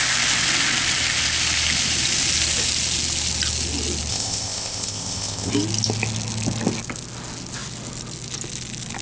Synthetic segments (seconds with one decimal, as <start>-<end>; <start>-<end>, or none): 4.1-5.5